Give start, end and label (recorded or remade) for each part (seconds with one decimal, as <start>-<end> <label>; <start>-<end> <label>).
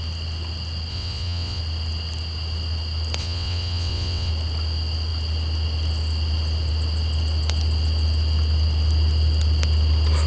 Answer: 0.0-0.9 recorded; 0.9-1.6 remade; 1.6-3.2 recorded; 3.2-4.3 remade; 4.3-10.3 recorded